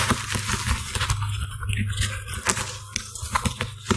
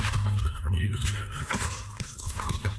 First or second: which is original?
first